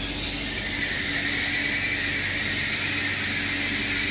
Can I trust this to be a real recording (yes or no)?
yes